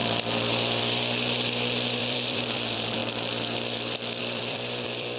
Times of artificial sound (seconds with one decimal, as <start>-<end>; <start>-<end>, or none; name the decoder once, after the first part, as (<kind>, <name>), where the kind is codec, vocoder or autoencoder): 0.8-3.0 (vocoder, BigVGAN v2); 4.2-5.2